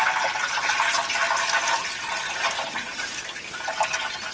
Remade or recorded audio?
recorded